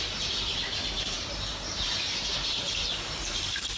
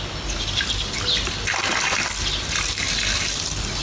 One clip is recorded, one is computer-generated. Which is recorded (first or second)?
second